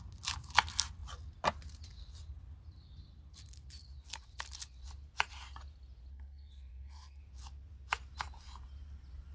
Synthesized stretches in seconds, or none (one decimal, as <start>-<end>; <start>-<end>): 6.1-7.2